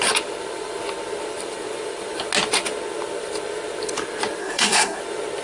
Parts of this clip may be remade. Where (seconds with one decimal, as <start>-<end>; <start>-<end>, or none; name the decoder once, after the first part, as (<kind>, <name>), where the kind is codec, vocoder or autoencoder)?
4.4-5.0 (codec, SNAC)